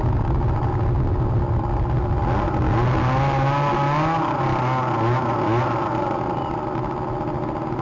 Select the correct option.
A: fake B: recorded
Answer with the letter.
B